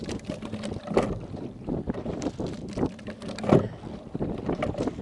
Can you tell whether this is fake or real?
real